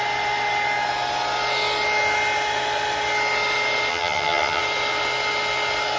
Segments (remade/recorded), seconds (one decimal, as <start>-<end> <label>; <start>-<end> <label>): 0.0-3.9 recorded; 3.9-4.6 remade; 4.6-6.0 recorded